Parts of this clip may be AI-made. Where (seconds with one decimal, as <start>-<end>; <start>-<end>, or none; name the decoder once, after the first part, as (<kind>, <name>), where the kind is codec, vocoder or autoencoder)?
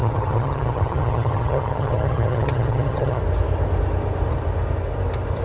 0.0-3.2 (vocoder, HiFi-GAN)